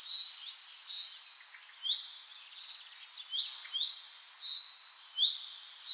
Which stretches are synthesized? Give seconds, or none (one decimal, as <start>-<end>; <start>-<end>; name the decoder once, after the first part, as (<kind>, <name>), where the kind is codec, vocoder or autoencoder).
none

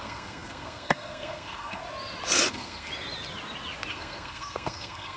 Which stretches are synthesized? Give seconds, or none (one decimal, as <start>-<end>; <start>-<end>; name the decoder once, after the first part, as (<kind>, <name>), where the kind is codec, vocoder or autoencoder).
0.0-1.8 (codec, SNAC); 2.5-2.9; 3.9-5.2